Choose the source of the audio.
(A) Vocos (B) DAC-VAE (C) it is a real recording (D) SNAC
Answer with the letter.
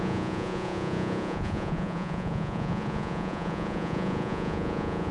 A